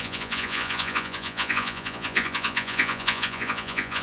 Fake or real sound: fake